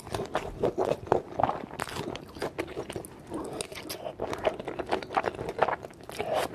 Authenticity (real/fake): real